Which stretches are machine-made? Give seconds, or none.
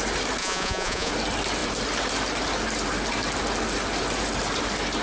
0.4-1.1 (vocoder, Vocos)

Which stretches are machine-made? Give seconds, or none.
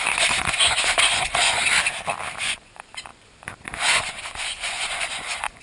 0.0-1.6 (vocoder, Vocos); 2.4-5.6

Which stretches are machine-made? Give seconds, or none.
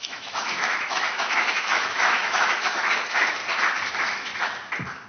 0.0-3.4 (autoencoder, DAC-VAE); 3.9-4.3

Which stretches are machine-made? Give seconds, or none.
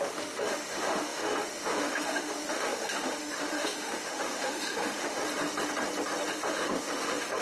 0.0-5.2 (autoencoder, DAC-VAE); 6.3-7.4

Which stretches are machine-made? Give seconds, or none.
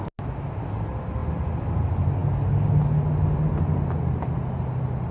none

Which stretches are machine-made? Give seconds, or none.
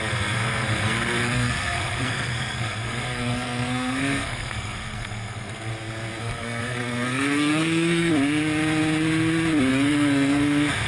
0.0-5.7 (codec, SNAC); 6.2-8.1; 9.7-10.9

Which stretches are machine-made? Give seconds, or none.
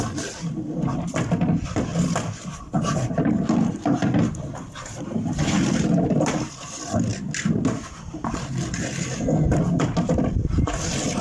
none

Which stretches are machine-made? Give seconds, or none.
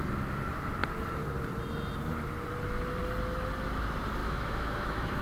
4.2-5.2 (autoencoder, DAC-VAE)